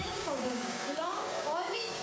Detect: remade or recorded remade